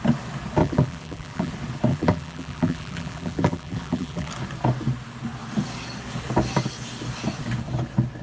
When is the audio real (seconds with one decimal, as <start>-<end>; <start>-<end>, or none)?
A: 0.0-0.6; 1.5-1.9; 4.3-8.2